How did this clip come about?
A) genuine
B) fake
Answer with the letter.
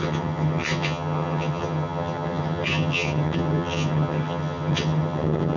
B